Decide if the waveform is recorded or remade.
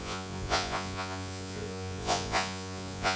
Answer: remade